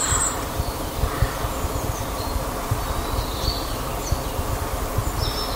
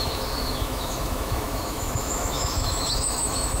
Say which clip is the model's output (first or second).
second